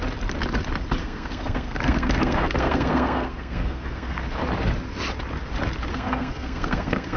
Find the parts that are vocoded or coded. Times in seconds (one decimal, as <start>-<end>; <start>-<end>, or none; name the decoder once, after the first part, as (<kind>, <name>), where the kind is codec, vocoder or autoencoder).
1.0-4.2 (codec, SNAC); 5.9-7.2